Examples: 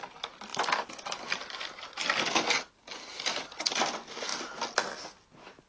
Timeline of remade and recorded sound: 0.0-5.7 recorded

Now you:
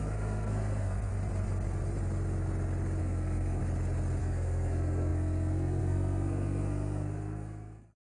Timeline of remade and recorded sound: 0.0-1.1 remade; 1.1-3.0 recorded; 3.0-3.6 remade; 3.6-4.2 recorded; 4.2-8.1 remade

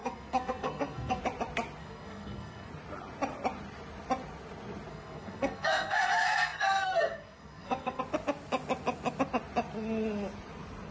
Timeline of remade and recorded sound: 0.0-1.2 remade; 1.2-1.8 recorded; 1.8-2.7 remade; 2.7-4.9 recorded; 4.9-8.0 remade; 8.0-10.9 recorded

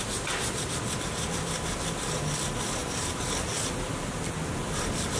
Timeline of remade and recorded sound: 0.0-5.2 recorded